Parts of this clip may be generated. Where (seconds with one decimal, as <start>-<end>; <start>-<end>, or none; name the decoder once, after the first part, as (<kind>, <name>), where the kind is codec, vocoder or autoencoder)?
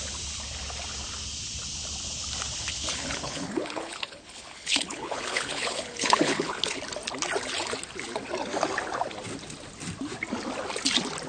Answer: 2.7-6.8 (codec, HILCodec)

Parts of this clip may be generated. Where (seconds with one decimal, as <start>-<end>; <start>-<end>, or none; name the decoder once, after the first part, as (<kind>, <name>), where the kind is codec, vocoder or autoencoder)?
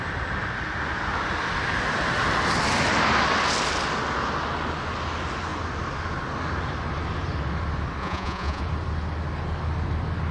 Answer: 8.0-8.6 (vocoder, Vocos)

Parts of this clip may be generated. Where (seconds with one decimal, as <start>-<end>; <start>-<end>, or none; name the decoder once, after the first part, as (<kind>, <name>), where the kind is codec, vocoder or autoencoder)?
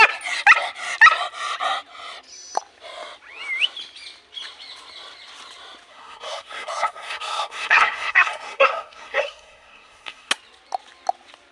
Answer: 5.9-10.3 (codec, SNAC)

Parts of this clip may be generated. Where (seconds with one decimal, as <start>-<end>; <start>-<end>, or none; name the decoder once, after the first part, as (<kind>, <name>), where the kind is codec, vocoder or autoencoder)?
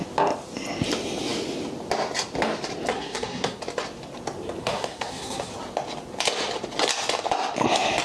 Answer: 2.9-3.6 (codec, SNAC); 4.6-5.5